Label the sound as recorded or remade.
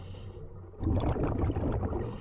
recorded